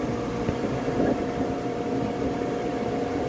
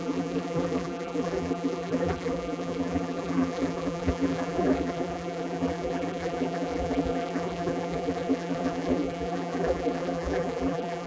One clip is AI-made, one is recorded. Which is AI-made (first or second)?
second